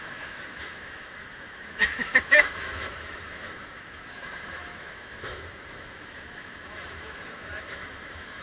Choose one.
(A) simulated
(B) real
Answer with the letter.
A